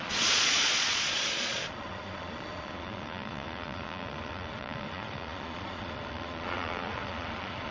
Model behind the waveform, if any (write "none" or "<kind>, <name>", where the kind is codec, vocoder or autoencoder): vocoder, Vocos